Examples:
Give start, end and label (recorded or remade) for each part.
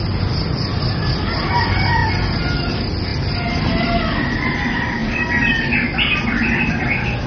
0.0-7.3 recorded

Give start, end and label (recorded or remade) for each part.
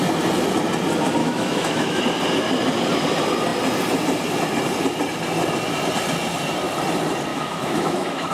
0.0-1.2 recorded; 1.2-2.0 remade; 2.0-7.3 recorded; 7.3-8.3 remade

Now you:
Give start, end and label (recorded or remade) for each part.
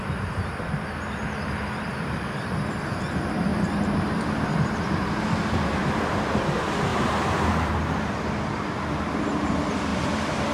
0.0-3.5 recorded; 3.5-5.2 remade; 5.2-6.9 recorded; 6.9-7.7 remade; 7.7-9.9 recorded; 9.9-10.5 remade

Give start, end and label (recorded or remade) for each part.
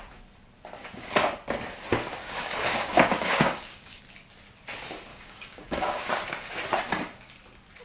0.0-0.8 recorded; 0.8-1.3 remade; 1.3-2.2 recorded; 2.2-4.0 remade; 4.0-5.1 recorded; 5.1-6.1 remade; 6.1-7.8 recorded